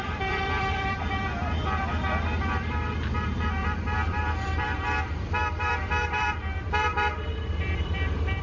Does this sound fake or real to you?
fake